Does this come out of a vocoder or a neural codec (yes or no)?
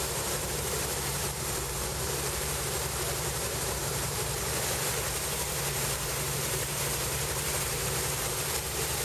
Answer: yes